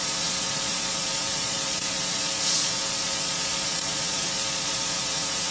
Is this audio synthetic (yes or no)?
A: yes